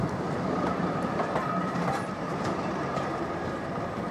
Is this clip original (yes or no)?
no